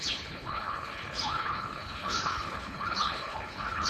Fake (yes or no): yes